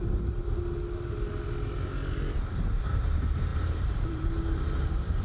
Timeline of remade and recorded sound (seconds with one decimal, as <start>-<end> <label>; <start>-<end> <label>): 0.0-0.4 remade; 0.4-2.8 recorded; 2.8-5.2 remade

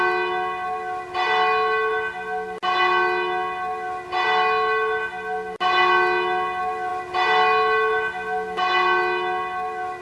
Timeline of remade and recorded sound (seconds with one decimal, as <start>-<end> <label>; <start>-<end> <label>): 0.0-10.0 recorded

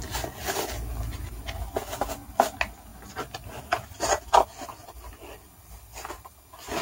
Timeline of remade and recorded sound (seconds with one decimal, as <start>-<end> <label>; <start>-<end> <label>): 0.0-6.8 recorded

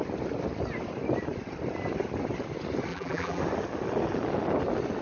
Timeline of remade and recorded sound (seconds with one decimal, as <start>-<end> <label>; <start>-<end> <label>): 0.0-2.9 recorded; 2.9-3.4 remade; 3.4-5.0 recorded

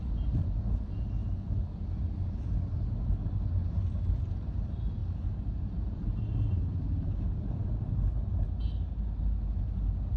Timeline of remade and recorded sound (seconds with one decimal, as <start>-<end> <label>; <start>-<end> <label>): 0.0-10.2 recorded

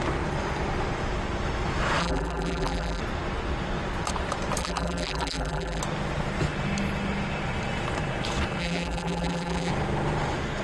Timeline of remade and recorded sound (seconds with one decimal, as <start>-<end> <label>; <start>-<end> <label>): 0.0-2.0 recorded; 2.0-3.0 remade; 3.0-4.6 recorded; 4.6-5.8 remade; 5.8-8.6 recorded; 8.6-9.7 remade; 9.7-10.6 recorded

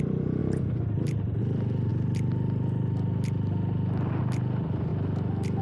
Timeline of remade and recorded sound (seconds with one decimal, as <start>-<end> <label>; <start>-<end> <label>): 0.0-0.4 remade; 0.4-1.4 recorded; 1.4-1.9 remade; 1.9-4.2 recorded; 4.2-4.9 remade; 4.9-5.6 recorded

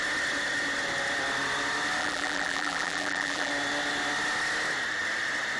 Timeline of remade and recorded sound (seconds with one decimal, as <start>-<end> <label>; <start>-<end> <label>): 0.0-2.0 recorded; 2.0-3.5 remade; 3.5-5.6 recorded